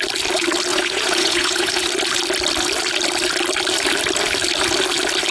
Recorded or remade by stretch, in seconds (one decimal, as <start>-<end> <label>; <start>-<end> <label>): 0.0-0.7 recorded; 0.7-1.9 remade; 1.9-5.3 recorded